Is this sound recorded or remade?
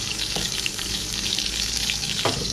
remade